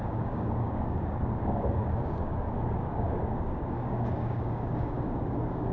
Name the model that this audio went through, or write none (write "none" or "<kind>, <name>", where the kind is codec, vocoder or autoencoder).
codec, DAC